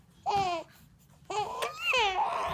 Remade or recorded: recorded